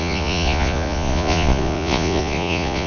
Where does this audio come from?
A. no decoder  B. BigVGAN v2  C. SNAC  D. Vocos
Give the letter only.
D